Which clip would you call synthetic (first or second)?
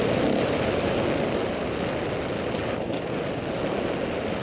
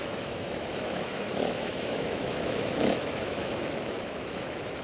second